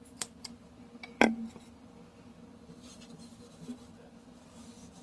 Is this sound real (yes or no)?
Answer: yes